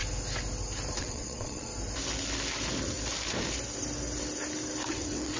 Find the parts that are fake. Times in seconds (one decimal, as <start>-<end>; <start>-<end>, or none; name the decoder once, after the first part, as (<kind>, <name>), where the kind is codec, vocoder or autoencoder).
1.0-1.7 (vocoder, WaveNeXt); 4.9-5.4